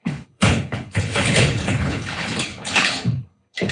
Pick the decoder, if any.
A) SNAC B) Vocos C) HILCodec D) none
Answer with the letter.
C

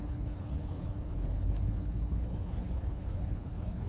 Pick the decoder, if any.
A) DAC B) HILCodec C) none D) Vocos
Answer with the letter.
B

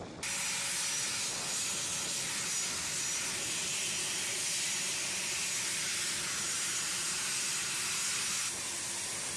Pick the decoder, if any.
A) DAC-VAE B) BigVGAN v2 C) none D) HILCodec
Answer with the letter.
C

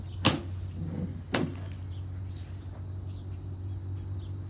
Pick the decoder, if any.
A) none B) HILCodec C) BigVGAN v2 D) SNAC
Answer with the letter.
A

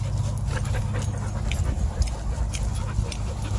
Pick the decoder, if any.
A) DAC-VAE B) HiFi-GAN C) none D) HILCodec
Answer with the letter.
C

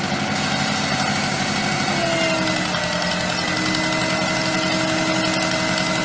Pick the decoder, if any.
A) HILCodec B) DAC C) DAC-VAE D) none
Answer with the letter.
D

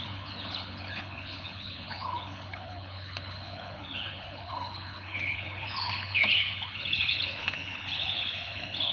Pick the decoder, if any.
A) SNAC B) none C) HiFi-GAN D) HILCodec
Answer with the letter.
D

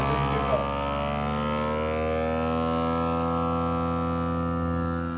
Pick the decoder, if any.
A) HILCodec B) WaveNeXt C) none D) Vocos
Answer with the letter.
C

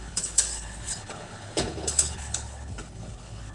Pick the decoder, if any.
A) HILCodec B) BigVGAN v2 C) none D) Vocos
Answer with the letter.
A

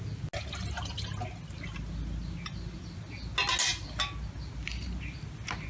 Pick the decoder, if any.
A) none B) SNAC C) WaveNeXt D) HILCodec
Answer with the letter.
A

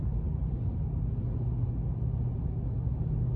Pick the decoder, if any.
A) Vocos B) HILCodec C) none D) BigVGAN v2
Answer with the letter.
C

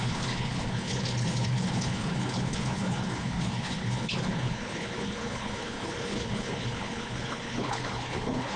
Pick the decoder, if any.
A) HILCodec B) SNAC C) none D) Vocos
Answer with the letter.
A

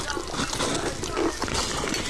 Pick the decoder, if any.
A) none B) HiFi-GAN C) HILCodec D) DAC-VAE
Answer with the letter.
A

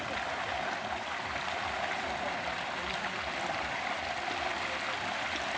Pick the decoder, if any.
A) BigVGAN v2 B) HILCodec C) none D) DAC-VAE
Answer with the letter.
C